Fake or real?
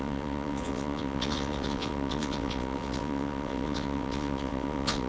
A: fake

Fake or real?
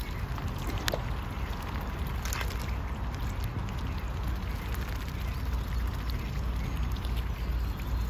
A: real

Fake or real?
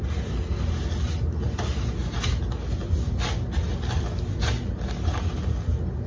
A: real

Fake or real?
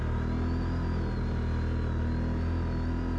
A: real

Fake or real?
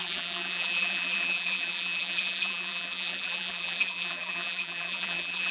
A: fake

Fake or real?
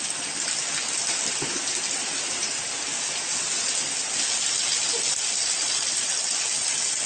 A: real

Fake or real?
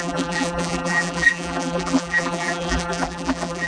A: fake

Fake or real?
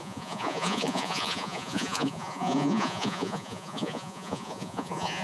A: fake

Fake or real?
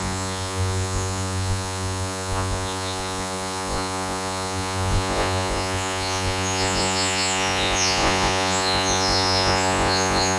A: fake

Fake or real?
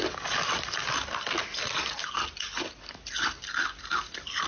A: real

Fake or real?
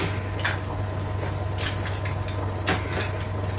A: real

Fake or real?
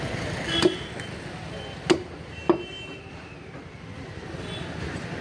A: real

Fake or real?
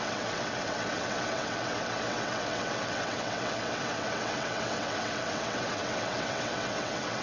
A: fake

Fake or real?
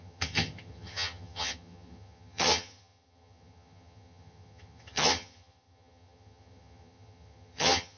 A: fake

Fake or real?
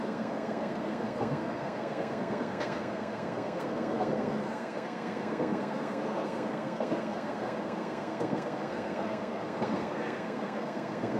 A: fake